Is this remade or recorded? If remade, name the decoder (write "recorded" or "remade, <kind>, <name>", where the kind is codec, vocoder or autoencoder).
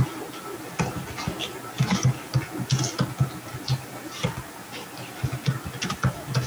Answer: recorded